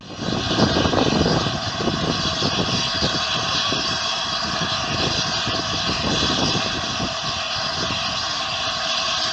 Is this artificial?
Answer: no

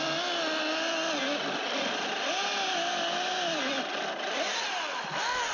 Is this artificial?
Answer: no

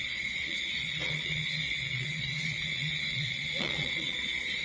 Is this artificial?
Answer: yes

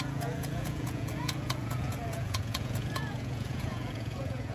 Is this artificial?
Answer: yes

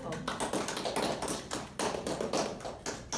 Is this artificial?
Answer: no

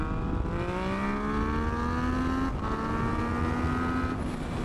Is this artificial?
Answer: no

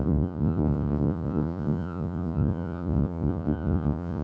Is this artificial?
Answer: yes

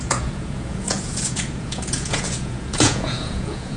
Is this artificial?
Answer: yes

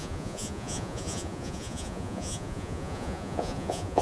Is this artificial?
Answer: yes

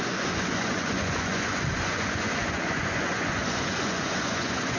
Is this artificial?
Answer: yes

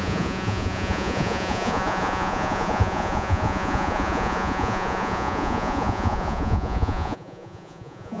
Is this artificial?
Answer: yes